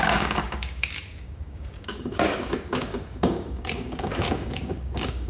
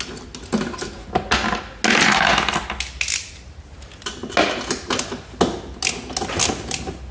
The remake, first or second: first